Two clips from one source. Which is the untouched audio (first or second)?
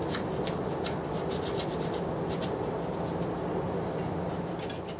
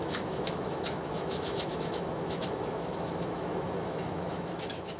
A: first